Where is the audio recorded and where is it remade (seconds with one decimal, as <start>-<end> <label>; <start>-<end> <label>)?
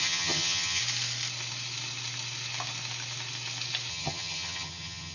0.0-0.8 remade; 0.8-3.9 recorded; 3.9-5.1 remade